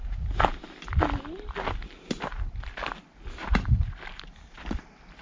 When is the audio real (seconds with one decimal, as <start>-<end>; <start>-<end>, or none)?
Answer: 0.0-3.4; 4.0-5.2